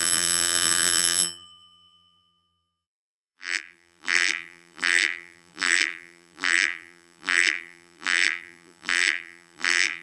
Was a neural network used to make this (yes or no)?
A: yes